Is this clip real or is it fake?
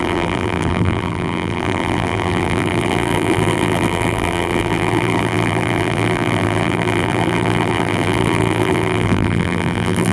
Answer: fake